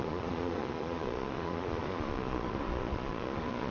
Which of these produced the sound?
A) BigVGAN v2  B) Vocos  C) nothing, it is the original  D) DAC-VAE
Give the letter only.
B